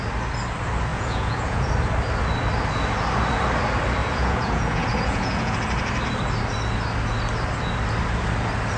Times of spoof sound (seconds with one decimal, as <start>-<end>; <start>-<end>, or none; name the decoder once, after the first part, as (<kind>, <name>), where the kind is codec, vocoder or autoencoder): 0.9-1.7 (vocoder, Vocos); 4.0-5.5

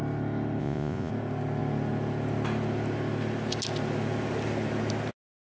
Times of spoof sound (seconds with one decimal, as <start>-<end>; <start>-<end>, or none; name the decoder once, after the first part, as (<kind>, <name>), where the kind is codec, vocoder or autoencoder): 0.6-1.1 (vocoder, Vocos)

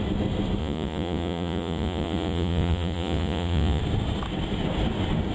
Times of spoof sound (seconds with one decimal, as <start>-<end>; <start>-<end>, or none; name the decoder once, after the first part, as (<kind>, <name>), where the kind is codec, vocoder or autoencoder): 0.6-3.8 (vocoder, Vocos)

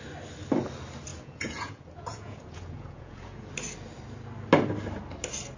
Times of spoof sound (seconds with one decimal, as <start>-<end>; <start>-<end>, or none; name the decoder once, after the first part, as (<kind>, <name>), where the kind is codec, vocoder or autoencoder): 1.1-3.5 (vocoder, Vocos)

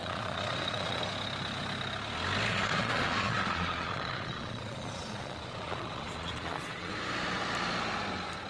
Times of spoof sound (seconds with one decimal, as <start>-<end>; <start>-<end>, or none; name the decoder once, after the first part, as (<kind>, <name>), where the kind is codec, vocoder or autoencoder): 0.0-1.0 (vocoder, Vocos); 2.5-6.9

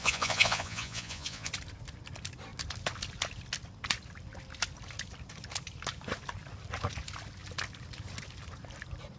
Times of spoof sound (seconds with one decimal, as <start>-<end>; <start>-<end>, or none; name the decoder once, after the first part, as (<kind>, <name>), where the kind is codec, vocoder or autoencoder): 0.0-1.5 (vocoder, Vocos)

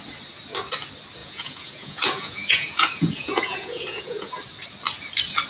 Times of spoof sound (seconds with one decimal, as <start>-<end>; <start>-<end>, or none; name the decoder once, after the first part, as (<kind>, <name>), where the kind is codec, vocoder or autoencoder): 1.2-4.4 (vocoder, Vocos)